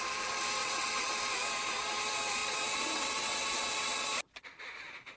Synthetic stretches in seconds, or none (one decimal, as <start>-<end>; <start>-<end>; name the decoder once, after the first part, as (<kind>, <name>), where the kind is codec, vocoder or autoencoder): 0.6-1.1 (vocoder, WaveNeXt); 2.4-4.1

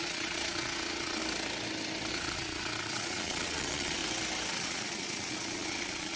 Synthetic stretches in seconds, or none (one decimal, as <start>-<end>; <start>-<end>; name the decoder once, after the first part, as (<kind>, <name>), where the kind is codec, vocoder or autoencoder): 0.0-1.2 (vocoder, Vocos); 2.1-4.0; 4.5-6.2

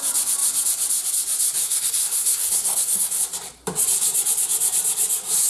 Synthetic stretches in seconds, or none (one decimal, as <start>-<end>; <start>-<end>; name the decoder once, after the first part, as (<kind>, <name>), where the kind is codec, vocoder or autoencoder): 1.6-3.2 (codec, SNAC)

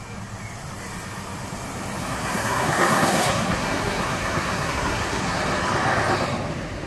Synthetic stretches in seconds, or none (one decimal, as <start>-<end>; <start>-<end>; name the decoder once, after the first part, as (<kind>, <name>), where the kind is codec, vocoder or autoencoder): 2.0-5.4 (codec, SNAC)

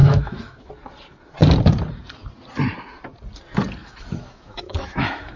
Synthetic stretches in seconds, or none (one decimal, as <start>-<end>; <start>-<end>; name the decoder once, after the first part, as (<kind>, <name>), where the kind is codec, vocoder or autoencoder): 0.0-0.7 (autoencoder, DAC-VAE); 3.8-5.4

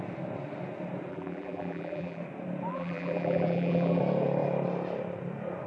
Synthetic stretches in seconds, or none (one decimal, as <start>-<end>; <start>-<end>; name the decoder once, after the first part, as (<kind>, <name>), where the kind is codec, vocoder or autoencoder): 1.1-2.2 (vocoder, BigVGAN v2); 2.7-4.0

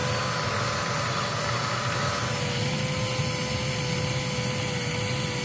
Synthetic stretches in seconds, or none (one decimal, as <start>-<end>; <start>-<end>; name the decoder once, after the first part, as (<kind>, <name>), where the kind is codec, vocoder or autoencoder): none

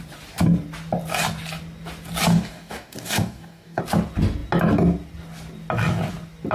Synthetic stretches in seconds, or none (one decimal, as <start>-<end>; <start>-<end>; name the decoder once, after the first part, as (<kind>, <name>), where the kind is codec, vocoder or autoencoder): 2.3-3.8 (codec, DAC)